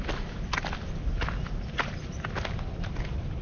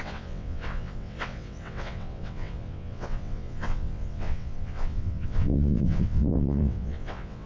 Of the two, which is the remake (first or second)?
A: second